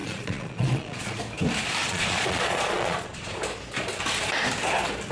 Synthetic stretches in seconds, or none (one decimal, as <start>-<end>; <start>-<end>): 0.0-1.2; 1.8-3.4